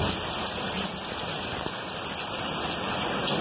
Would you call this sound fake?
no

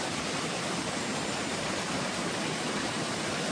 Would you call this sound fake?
yes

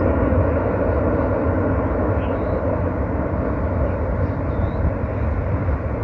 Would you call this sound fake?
no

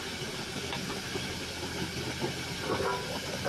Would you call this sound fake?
no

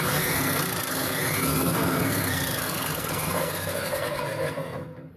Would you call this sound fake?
yes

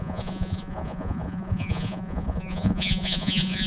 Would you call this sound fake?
yes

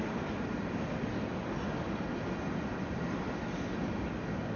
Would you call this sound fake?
no